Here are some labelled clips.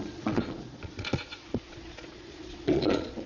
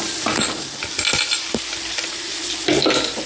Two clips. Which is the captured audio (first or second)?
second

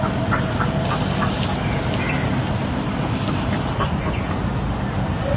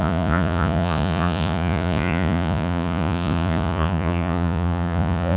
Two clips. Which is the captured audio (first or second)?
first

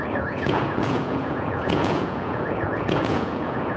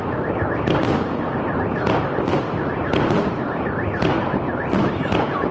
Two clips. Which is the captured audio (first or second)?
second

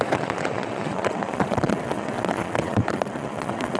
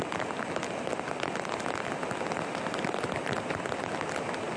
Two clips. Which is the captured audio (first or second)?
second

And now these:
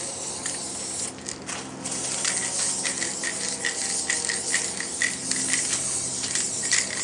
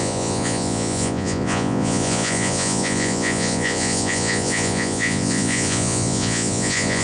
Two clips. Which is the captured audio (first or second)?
first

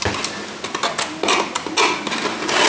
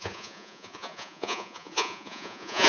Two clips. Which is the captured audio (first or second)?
first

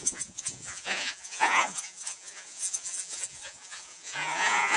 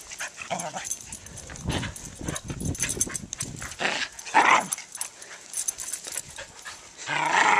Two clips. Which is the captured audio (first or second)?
second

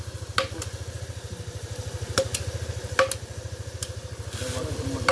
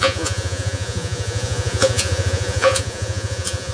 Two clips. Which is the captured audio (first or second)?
first